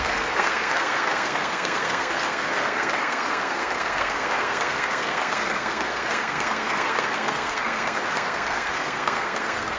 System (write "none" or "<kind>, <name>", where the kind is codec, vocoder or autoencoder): codec, SNAC